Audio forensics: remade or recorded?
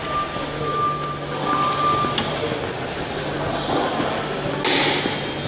recorded